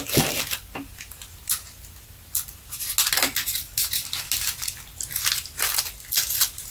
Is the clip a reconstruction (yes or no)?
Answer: no